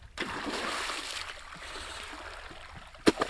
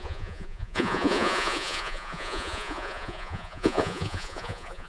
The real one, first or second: first